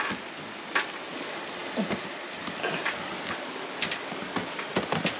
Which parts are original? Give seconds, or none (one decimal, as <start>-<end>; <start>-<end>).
0.0-5.2